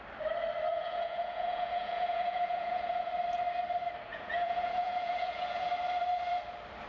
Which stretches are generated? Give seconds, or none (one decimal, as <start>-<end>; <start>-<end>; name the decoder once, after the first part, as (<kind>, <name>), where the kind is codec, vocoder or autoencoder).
0.7-3.1 (vocoder, Vocos); 4.1-5.7